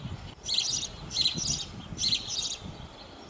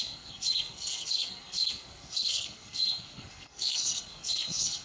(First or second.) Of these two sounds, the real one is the first